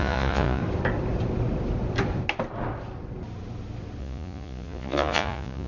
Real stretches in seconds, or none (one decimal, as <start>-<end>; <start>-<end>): 0.6-4.0